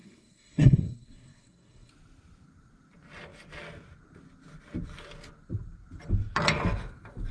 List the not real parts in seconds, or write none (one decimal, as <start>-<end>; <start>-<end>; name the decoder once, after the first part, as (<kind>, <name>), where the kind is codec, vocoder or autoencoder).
0.0-1.9 (codec, SNAC)